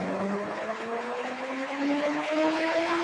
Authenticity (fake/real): fake